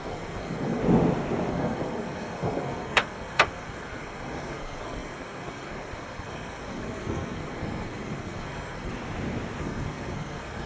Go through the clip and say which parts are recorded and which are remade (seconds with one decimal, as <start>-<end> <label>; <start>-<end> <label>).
0.0-0.8 remade; 0.8-1.5 recorded; 1.5-8.9 remade; 8.9-9.6 recorded; 9.6-10.7 remade